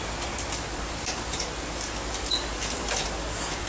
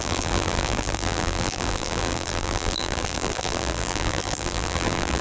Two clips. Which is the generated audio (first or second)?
second